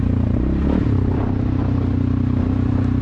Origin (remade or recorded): remade